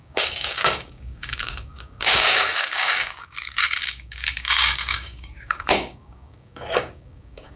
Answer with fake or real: fake